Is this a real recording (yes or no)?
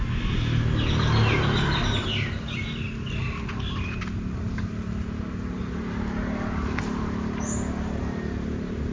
yes